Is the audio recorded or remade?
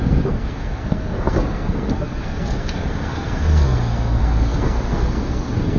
remade